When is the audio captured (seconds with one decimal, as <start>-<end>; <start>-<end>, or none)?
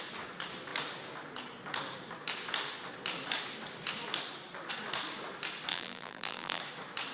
0.0-5.7; 6.6-7.1